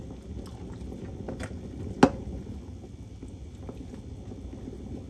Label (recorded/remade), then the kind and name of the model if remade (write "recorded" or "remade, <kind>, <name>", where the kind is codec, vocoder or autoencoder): recorded